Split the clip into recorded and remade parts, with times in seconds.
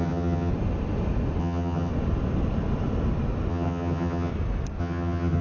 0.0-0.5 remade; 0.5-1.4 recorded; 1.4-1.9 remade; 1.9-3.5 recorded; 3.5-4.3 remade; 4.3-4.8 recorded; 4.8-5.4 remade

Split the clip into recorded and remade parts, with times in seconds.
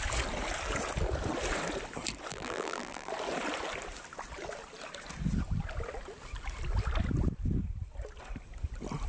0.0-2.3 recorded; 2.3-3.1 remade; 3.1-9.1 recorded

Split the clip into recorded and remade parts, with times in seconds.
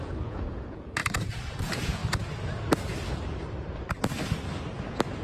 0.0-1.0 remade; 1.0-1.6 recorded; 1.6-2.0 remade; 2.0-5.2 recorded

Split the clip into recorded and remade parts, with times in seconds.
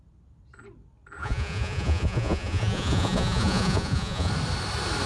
0.0-1.2 recorded; 1.2-4.3 remade; 4.3-5.1 recorded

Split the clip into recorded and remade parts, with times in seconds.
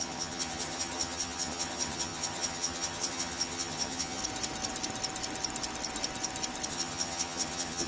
0.0-4.2 remade; 4.2-6.7 recorded; 6.7-7.9 remade